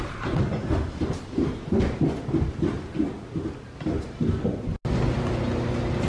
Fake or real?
real